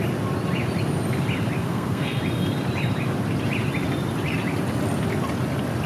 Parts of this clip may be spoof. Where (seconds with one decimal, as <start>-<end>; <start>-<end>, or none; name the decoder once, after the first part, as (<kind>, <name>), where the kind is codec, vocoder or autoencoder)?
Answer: 1.6-2.2 (codec, SNAC)